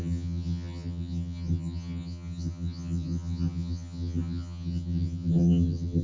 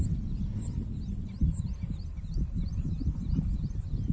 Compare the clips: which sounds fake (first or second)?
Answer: first